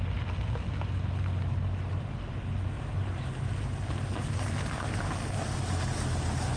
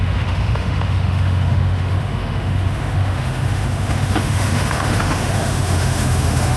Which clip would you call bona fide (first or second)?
first